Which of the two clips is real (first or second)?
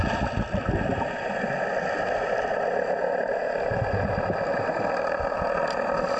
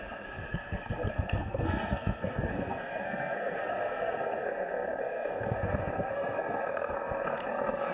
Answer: first